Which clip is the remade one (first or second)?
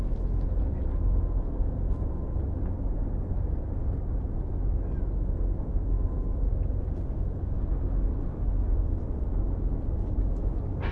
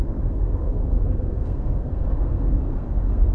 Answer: second